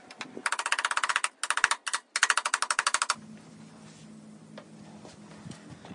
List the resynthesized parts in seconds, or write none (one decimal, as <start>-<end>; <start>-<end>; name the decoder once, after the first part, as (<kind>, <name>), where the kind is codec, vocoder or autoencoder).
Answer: none